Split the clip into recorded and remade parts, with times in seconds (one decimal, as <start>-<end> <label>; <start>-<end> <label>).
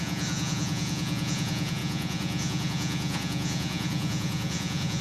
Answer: 0.0-5.0 remade